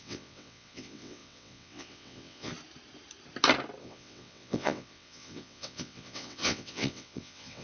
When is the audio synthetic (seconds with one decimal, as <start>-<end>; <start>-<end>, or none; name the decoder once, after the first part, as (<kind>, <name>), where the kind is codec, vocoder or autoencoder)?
0.0-2.5 (vocoder, WaveNeXt); 3.8-7.6